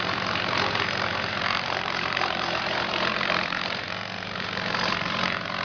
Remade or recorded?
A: remade